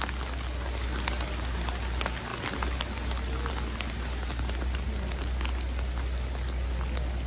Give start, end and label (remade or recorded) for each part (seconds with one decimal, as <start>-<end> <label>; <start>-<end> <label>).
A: 0.0-7.3 recorded